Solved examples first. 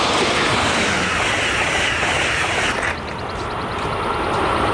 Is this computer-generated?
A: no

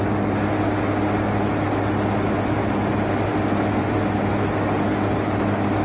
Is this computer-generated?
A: no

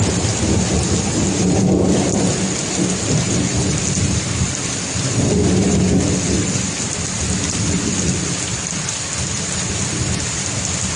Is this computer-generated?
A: no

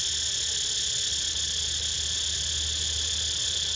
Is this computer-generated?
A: no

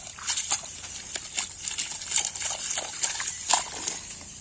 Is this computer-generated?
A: no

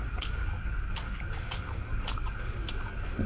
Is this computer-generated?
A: yes